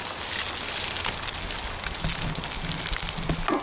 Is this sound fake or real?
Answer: real